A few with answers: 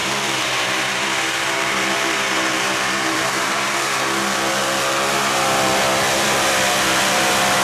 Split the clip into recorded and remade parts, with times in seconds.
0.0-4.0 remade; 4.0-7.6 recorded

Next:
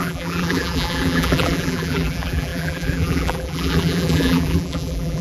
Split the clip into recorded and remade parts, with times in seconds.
0.0-5.2 remade

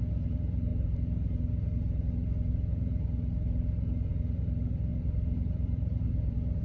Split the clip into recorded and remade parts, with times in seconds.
0.0-4.9 recorded; 4.9-6.6 remade

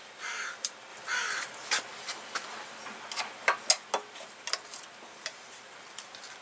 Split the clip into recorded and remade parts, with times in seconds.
0.0-6.4 recorded

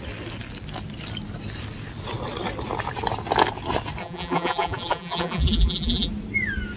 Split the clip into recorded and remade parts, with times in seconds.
0.0-4.0 recorded; 4.0-6.1 remade; 6.1-6.8 recorded

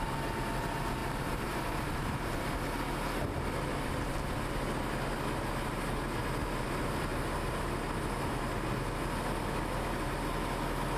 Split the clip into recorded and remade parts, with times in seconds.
0.0-1.0 recorded; 1.0-2.5 remade; 2.5-7.1 recorded; 7.1-7.6 remade; 7.6-11.0 recorded

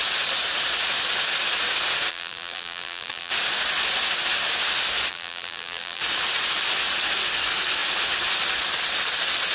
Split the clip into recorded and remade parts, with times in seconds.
0.0-2.1 recorded; 2.1-3.3 remade; 3.3-5.1 recorded; 5.1-6.0 remade; 6.0-9.5 recorded